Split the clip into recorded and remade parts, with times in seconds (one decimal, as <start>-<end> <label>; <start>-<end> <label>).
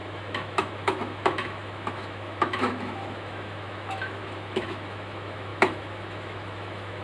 0.0-7.0 remade